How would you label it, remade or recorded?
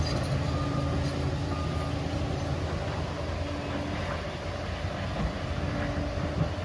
recorded